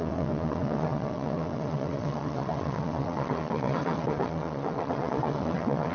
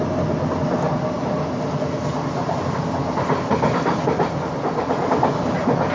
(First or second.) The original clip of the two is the second